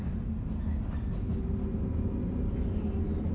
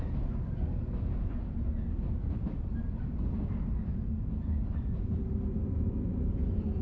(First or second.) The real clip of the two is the first